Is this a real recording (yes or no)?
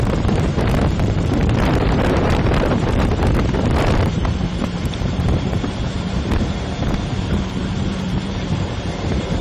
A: no